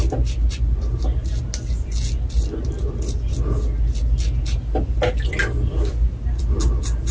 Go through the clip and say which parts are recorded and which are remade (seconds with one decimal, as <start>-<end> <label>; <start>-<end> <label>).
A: 0.0-7.1 recorded